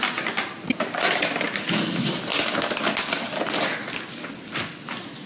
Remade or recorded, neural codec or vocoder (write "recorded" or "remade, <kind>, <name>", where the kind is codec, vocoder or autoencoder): recorded